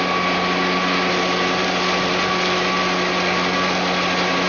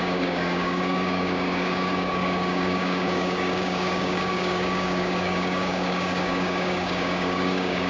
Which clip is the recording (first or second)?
first